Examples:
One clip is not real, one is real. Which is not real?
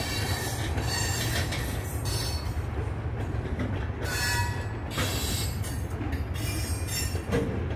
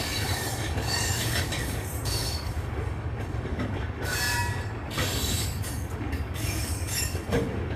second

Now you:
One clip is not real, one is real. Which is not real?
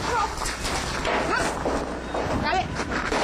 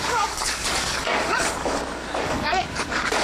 second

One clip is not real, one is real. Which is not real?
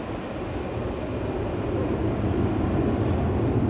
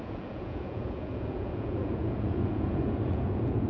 second